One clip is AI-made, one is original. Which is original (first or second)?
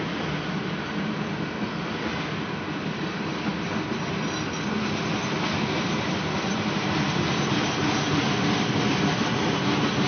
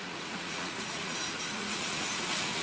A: first